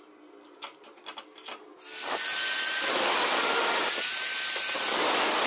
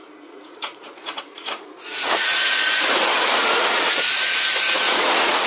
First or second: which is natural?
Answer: first